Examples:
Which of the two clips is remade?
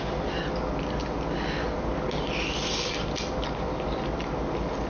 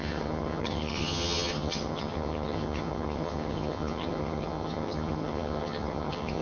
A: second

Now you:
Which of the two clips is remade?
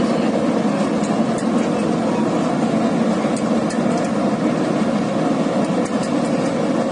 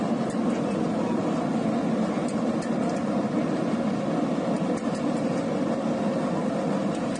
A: second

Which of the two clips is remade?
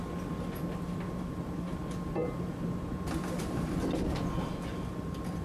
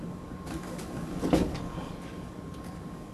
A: second